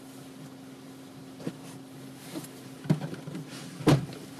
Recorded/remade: recorded